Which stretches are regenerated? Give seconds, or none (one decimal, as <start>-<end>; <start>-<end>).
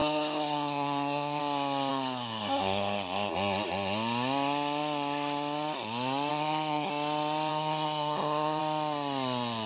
0.0-1.4; 1.9-3.3; 6.3-6.9; 7.5-8.6